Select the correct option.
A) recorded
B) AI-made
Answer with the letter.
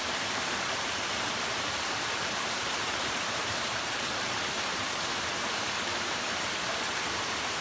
B